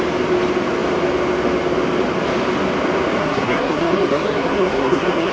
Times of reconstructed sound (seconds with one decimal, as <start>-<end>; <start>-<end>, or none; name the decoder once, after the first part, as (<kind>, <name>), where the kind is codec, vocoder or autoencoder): 3.2-5.3 (codec, SNAC)